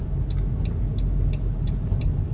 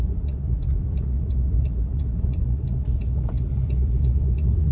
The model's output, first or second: second